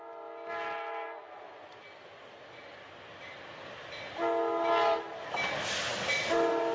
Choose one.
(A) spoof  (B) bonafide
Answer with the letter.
B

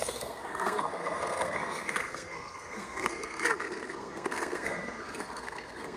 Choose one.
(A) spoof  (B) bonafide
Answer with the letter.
A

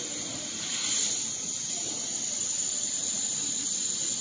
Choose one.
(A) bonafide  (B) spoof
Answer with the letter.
A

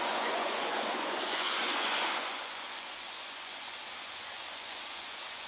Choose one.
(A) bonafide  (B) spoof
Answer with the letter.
B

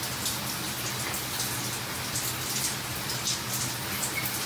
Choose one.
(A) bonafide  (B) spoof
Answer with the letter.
A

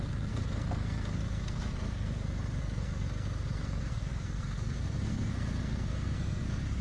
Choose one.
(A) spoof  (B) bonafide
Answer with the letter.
A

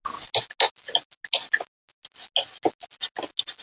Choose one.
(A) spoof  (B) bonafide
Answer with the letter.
B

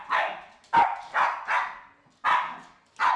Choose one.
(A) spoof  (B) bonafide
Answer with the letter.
B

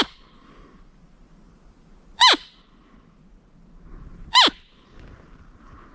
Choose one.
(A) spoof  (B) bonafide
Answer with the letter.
B